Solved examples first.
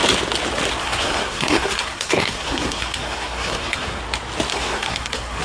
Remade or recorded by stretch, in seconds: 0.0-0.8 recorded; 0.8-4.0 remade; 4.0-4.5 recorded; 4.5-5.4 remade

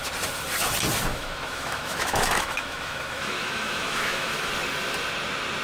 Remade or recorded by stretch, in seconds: 0.0-1.1 recorded; 1.1-4.5 remade; 4.5-5.6 recorded

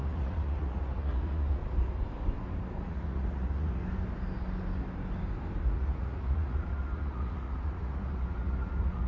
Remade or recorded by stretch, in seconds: 0.0-1.6 remade; 1.6-2.8 recorded; 2.8-3.8 remade; 3.8-5.6 recorded; 5.6-9.1 remade

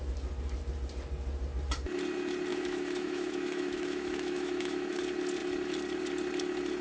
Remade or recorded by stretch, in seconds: 0.0-2.5 recorded; 2.5-5.0 remade; 5.0-6.8 recorded

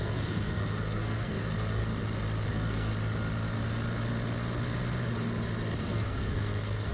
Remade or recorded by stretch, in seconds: 0.0-1.9 remade; 1.9-2.5 recorded; 2.5-2.9 remade; 2.9-5.8 recorded; 5.8-6.9 remade

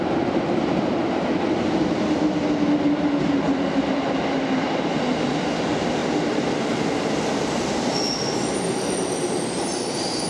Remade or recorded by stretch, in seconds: 0.0-10.3 recorded